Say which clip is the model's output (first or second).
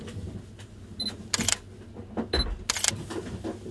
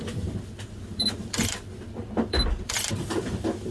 second